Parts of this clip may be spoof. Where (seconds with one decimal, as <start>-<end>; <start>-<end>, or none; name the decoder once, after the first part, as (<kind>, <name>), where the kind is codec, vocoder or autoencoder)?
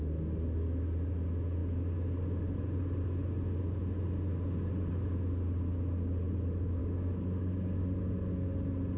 6.8-8.0 (codec, DAC)